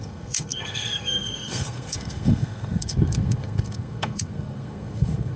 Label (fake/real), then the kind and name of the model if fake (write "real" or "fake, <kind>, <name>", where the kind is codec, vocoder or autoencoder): fake, codec, SNAC